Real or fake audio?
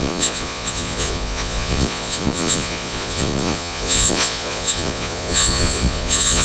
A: fake